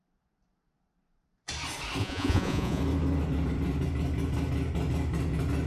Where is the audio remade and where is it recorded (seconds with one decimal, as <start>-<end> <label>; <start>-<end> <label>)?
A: 0.0-2.0 recorded; 2.0-2.8 remade; 2.8-5.7 recorded